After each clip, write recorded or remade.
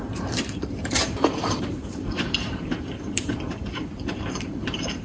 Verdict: remade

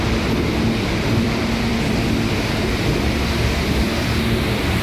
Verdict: remade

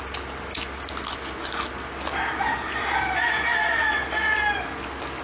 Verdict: recorded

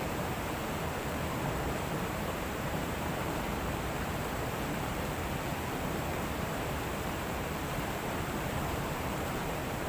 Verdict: remade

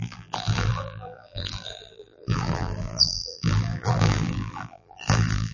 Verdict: remade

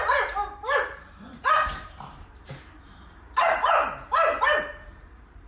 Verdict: remade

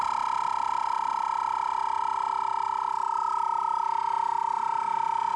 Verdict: recorded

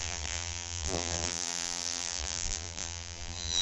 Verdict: remade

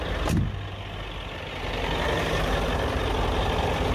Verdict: recorded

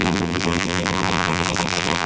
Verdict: remade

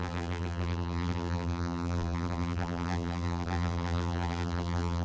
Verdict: remade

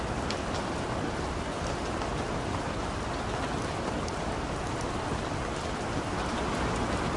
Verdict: recorded